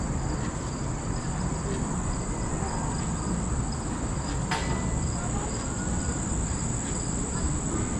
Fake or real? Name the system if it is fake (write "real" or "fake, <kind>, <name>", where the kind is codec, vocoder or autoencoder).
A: real